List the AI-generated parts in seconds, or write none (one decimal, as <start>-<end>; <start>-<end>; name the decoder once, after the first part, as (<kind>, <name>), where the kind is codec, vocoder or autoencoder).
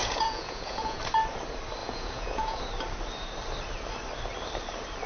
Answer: 0.0-1.0 (vocoder, Vocos); 1.8-2.6